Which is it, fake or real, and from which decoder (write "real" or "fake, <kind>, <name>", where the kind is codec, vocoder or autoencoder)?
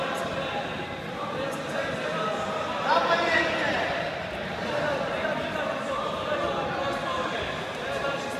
real